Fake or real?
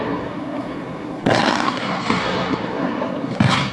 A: fake